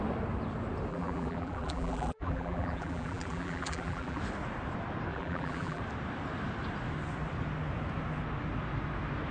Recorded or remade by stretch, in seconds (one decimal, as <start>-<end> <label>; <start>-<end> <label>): 0.0-0.9 recorded; 0.9-4.2 remade; 4.2-5.1 recorded; 5.1-5.8 remade; 5.8-9.3 recorded